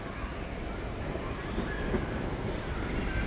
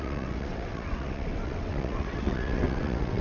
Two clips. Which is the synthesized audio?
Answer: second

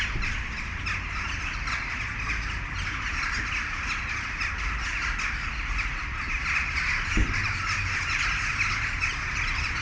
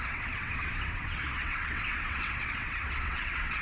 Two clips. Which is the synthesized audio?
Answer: second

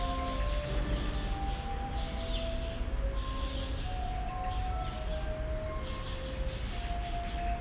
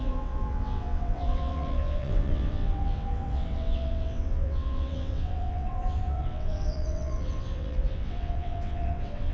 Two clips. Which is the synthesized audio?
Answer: second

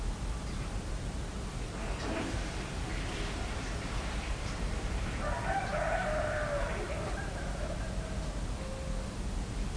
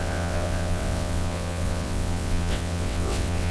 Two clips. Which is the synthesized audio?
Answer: second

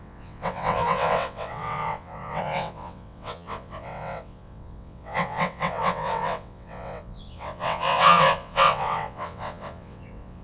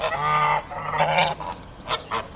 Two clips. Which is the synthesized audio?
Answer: first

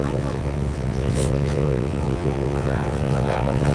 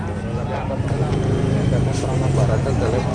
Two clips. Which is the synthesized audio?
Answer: first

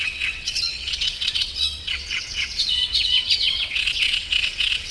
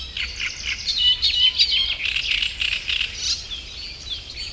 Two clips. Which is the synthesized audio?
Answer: first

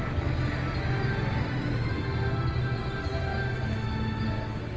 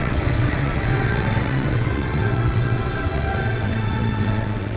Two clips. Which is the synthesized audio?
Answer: second